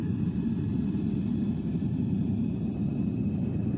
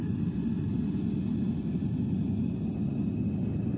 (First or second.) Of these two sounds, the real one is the second